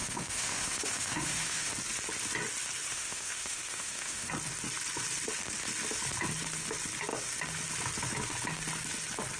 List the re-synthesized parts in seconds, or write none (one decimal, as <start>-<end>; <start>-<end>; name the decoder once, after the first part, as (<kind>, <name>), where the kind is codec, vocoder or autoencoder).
0.0-1.7 (autoencoder, DAC-VAE); 2.9-4.3